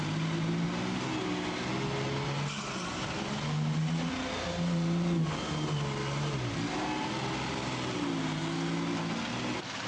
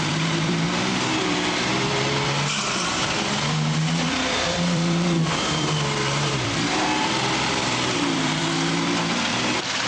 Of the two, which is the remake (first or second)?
second